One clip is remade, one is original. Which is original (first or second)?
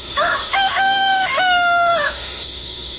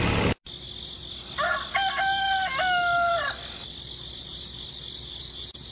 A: second